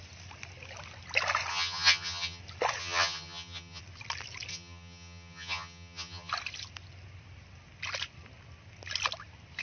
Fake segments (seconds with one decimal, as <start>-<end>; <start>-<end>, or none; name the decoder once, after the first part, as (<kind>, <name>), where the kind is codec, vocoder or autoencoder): 1.5-2.4 (vocoder, HiFi-GAN); 2.8-3.8; 4.5-6.3